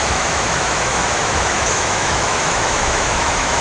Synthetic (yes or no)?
yes